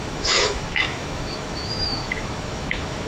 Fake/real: fake